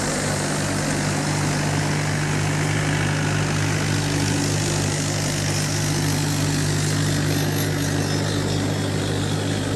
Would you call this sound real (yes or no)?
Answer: yes